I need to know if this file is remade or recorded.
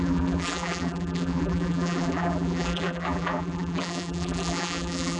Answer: remade